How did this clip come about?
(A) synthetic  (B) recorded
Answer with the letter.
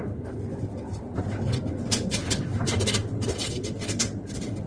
B